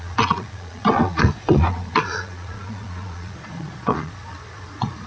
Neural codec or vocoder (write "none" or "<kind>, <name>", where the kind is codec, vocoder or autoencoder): vocoder, Vocos